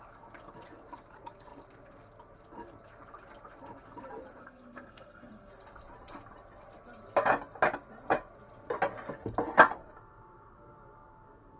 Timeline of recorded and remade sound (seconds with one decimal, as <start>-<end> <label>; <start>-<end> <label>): 0.0-4.4 recorded; 4.4-5.5 remade; 5.5-11.6 recorded